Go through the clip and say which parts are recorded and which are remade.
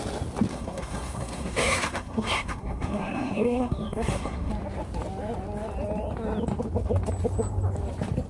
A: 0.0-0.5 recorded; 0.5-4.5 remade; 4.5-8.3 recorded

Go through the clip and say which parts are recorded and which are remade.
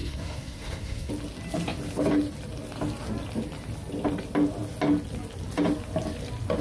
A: 0.0-1.1 remade; 1.1-6.6 recorded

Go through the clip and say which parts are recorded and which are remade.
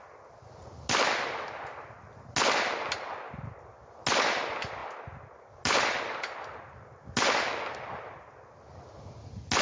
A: 0.0-9.6 recorded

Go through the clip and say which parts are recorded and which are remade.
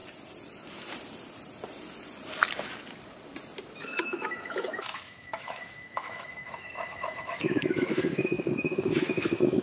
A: 0.0-3.8 recorded; 3.8-9.6 remade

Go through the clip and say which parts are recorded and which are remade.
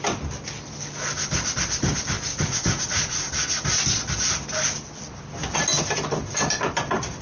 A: 0.0-2.3 recorded; 2.3-3.3 remade; 3.3-7.2 recorded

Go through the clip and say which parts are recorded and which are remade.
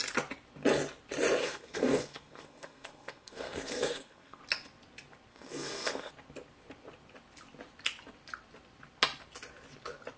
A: 0.0-1.4 recorded; 1.4-4.4 remade; 4.4-5.3 recorded; 5.3-6.1 remade; 6.1-10.2 recorded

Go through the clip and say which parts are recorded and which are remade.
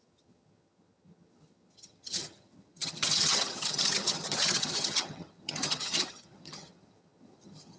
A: 0.0-7.8 remade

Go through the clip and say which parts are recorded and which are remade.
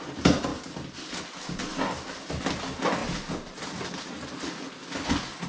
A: 0.0-5.5 recorded